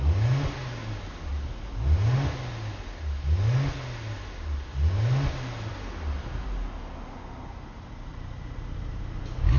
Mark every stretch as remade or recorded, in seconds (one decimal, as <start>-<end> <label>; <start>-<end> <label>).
0.0-8.1 recorded; 8.1-9.0 remade; 9.0-9.6 recorded